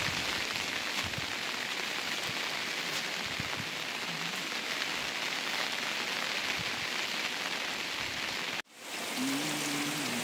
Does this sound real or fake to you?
real